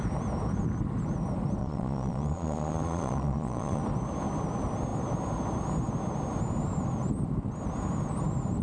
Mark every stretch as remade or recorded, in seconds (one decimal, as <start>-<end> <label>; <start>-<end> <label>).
0.0-1.6 recorded; 1.6-3.8 remade; 3.8-8.6 recorded